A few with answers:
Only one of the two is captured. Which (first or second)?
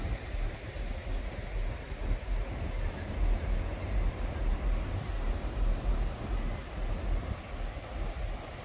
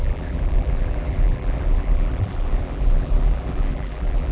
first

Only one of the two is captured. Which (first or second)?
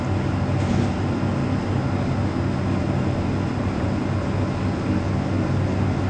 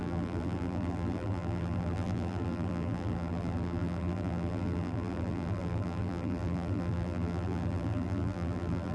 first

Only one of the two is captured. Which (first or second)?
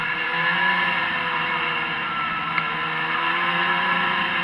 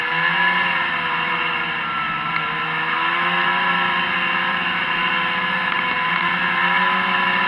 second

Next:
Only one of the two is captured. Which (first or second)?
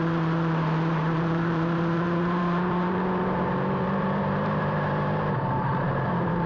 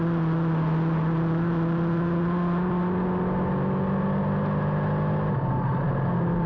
second